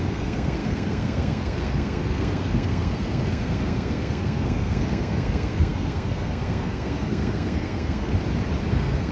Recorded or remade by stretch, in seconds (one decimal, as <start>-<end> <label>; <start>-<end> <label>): 0.0-8.1 remade; 8.1-8.7 recorded; 8.7-9.1 remade